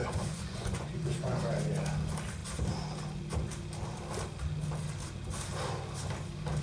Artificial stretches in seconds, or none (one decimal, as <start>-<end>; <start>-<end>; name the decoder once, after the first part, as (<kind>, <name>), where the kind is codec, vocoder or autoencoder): 0.0-1.4 (vocoder, Vocos)